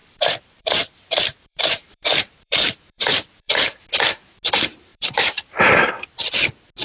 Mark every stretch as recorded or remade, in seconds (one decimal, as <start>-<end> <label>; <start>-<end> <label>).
0.0-3.8 remade; 3.8-4.9 recorded; 4.9-5.9 remade; 5.9-6.8 recorded